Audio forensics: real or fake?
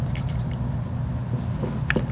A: real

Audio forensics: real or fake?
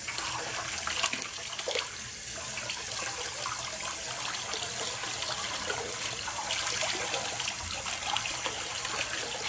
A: real